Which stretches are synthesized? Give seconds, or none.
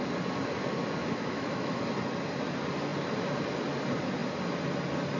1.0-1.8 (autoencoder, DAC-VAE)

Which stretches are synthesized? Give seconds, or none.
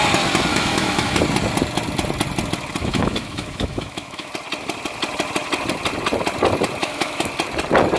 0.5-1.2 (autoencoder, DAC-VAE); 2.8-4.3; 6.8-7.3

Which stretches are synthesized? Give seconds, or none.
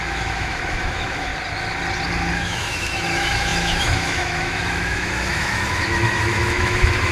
0.0-1.3 (autoencoder, DAC-VAE); 2.3-7.1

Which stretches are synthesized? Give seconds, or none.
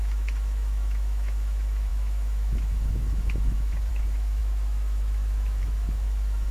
0.0-6.5 (autoencoder, DAC-VAE)